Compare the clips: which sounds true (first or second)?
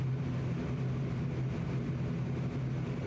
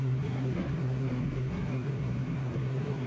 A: first